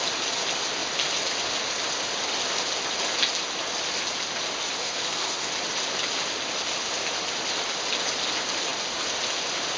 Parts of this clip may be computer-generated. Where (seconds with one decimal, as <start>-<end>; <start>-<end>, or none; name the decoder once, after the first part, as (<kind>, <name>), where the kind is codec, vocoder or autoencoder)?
4.8-5.5 (codec, SNAC)